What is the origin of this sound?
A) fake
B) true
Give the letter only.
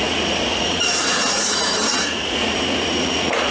A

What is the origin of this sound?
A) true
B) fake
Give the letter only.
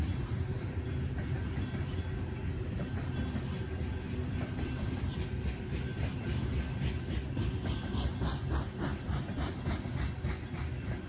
A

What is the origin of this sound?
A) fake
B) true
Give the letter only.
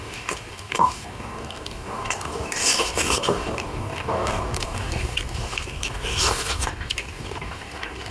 A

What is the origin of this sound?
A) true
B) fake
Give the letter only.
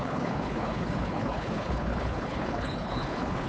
B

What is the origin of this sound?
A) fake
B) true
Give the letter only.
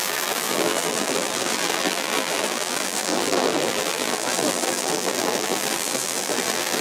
A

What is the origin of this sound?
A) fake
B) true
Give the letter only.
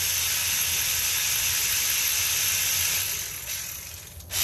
B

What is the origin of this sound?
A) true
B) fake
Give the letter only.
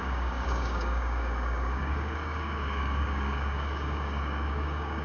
B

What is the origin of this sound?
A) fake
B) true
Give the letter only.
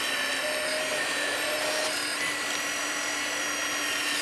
B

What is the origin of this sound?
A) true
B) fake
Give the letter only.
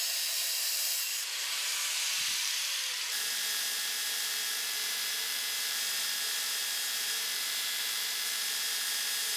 B